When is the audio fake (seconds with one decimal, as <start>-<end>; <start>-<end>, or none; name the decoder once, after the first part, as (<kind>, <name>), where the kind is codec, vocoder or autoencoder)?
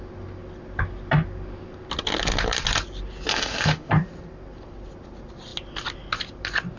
3.3-3.9 (autoencoder, DAC-VAE)